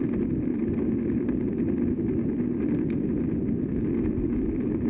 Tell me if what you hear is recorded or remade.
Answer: recorded